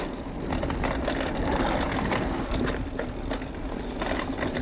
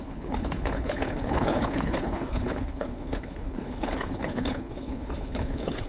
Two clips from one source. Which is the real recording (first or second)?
first